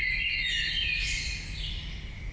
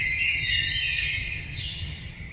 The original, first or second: first